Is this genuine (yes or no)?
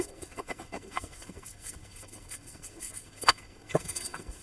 no